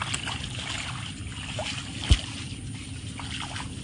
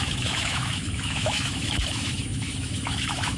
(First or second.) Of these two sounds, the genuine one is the first